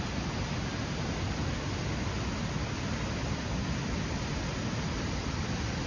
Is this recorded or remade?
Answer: recorded